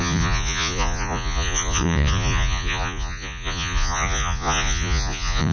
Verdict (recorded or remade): remade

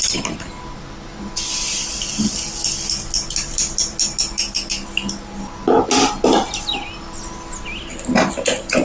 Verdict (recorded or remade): recorded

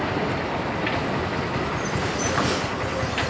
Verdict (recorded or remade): remade